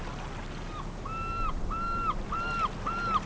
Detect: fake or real real